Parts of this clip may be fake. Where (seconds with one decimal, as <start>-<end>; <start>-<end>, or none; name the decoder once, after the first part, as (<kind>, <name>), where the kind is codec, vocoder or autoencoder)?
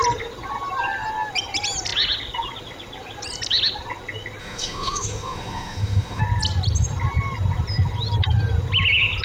4.4-6.2 (autoencoder, DAC-VAE)